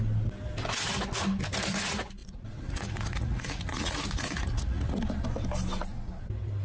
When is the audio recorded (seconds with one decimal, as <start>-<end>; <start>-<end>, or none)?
0.0-2.2; 5.0-6.6